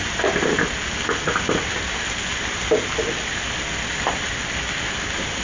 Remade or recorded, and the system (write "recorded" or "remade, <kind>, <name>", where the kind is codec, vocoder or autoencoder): recorded